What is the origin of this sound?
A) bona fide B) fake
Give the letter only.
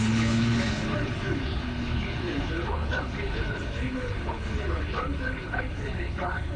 B